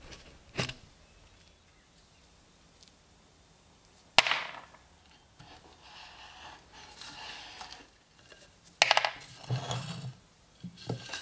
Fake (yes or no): no